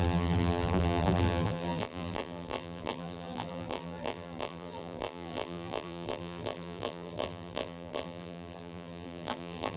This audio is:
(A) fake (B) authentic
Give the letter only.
A